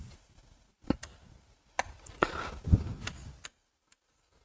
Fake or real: real